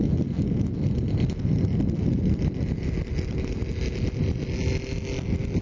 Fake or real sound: real